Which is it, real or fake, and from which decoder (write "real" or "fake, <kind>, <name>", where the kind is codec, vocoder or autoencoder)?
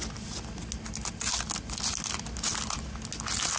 real